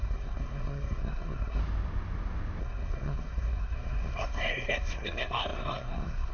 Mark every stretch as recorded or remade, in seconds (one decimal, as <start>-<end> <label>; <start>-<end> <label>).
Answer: 0.0-1.6 remade; 1.6-2.6 recorded; 2.6-6.3 remade